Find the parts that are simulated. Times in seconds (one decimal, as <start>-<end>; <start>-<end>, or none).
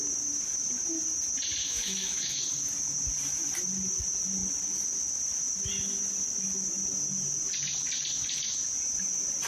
1.6-2.4